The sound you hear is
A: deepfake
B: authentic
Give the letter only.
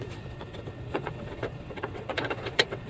A